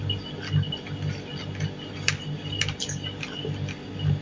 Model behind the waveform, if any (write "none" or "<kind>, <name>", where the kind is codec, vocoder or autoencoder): none